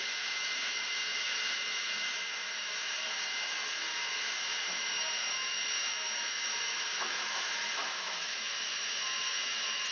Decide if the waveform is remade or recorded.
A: remade